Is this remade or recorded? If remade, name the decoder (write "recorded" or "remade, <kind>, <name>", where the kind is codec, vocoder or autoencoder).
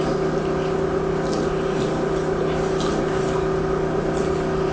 recorded